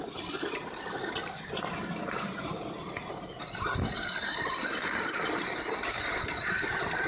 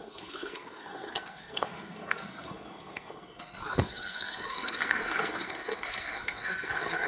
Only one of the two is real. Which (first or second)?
first